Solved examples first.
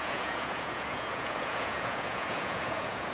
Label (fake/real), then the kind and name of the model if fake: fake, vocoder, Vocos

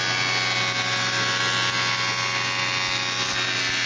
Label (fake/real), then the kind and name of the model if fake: real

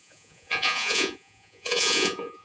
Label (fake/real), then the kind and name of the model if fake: fake, vocoder, Vocos